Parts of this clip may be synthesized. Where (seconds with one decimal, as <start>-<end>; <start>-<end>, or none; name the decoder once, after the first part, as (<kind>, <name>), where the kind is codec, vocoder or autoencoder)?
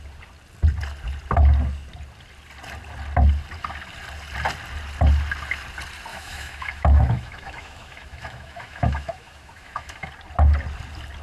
6.1-10.1 (autoencoder, DAC-VAE)